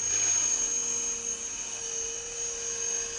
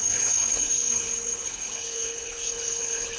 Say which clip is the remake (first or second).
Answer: second